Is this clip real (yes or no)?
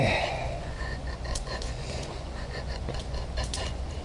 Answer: no